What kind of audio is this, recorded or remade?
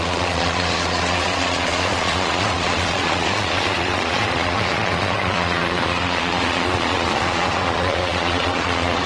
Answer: remade